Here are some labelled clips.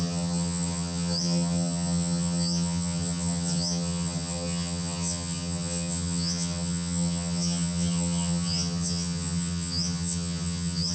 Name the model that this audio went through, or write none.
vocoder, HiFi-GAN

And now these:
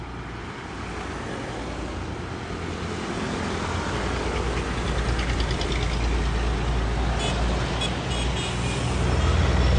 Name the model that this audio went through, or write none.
none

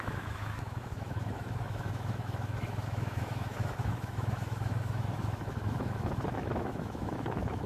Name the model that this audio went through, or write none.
autoencoder, DAC-VAE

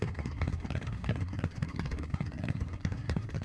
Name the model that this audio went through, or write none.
codec, SNAC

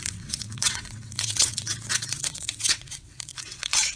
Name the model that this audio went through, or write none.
vocoder, WaveNeXt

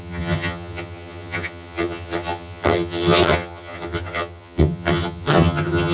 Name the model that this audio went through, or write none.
vocoder, HiFi-GAN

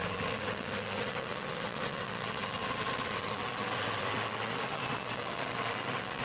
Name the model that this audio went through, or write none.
vocoder, WaveNeXt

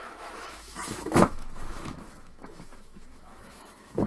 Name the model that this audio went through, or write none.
autoencoder, DAC-VAE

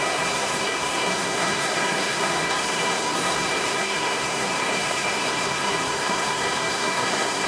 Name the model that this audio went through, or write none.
codec, SNAC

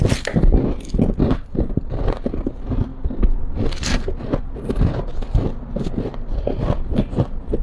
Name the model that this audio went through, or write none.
none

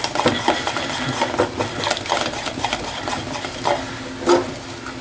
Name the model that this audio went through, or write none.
none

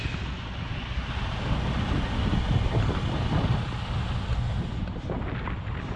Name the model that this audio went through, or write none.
none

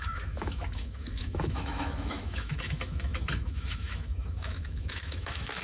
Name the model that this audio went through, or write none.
autoencoder, DAC-VAE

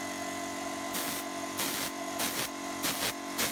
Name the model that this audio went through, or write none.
none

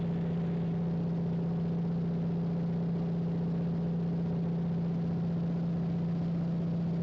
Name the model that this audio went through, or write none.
none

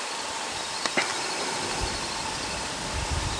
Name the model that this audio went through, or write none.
none